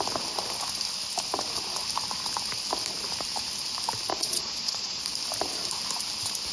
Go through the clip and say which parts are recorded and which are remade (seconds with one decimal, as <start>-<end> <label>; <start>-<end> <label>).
0.0-4.1 recorded; 4.1-5.0 remade; 5.0-6.5 recorded